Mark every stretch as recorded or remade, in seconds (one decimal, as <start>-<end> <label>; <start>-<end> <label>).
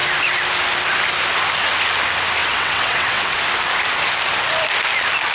0.0-2.4 recorded; 2.4-3.4 remade; 3.4-5.3 recorded